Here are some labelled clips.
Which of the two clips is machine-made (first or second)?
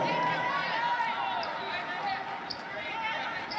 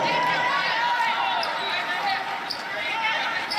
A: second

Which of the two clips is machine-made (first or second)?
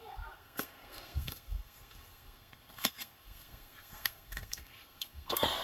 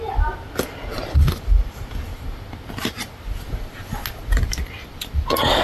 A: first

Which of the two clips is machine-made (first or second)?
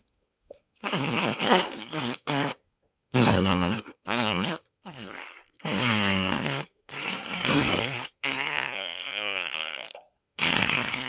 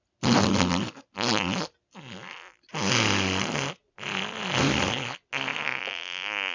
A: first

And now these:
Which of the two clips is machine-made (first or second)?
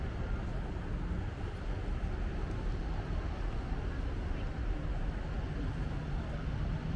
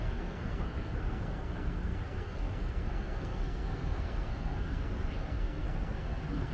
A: second